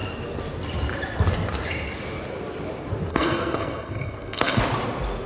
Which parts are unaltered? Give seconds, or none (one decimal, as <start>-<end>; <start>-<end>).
0.0-3.1; 4.6-5.3